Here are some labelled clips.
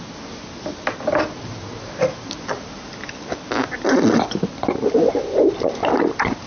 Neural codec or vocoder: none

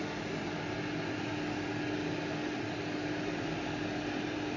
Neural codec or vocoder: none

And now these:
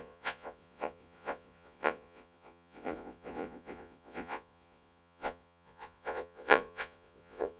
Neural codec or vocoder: vocoder, Vocos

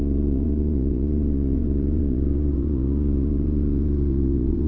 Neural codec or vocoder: vocoder, Vocos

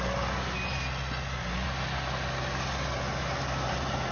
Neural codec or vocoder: none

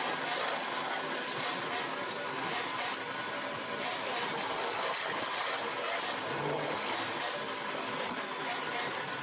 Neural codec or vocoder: none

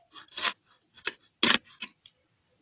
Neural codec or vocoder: none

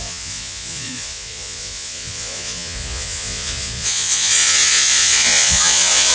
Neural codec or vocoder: vocoder, Vocos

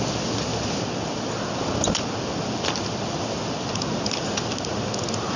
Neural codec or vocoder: none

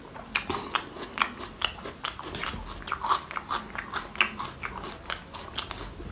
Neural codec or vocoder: none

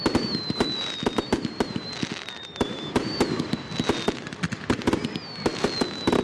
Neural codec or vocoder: none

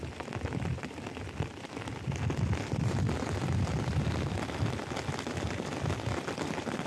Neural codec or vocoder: none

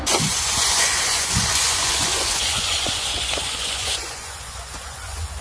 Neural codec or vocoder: vocoder, Vocos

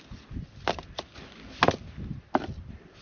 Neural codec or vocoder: none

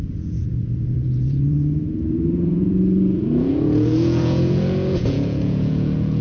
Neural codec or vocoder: vocoder, Vocos